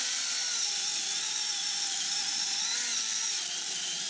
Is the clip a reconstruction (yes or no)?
no